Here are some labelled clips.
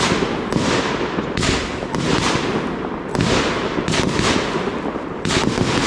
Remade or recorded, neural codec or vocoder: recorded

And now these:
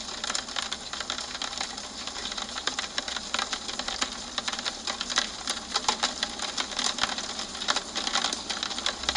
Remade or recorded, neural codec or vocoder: recorded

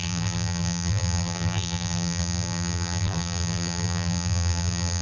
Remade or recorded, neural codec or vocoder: remade, vocoder, BigVGAN v2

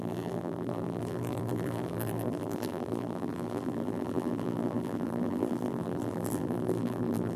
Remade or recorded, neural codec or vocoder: remade, vocoder, BigVGAN v2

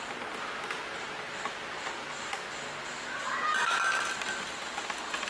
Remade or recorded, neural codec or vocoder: recorded